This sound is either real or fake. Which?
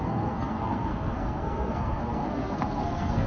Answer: fake